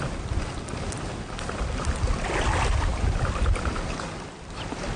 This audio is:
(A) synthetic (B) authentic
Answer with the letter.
B